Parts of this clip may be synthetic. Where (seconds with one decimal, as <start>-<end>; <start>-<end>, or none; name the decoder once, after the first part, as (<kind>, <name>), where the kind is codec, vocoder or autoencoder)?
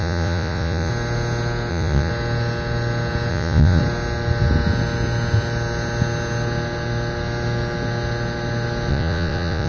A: 0.0-0.9 (vocoder, Vocos); 1.7-2.1; 3.3-3.8; 8.9-9.7